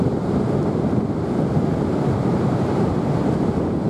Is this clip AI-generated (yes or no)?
no